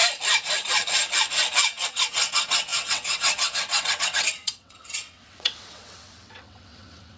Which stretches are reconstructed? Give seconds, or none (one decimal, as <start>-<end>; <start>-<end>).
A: 1.9-7.2